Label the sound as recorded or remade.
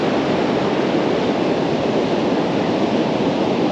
recorded